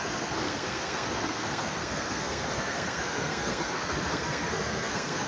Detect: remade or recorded remade